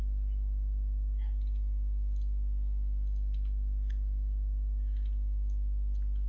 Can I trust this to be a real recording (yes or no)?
yes